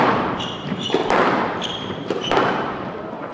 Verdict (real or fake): fake